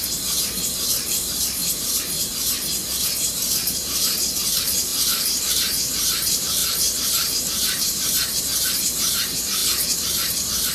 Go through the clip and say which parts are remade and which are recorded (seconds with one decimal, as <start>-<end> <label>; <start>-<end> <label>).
0.0-2.3 remade; 2.3-3.2 recorded; 3.2-10.7 remade